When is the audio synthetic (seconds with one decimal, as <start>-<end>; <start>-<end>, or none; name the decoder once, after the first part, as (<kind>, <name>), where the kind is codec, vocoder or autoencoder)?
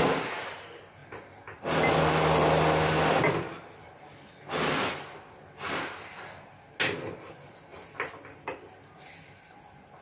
7.7-8.5 (vocoder, BigVGAN v2)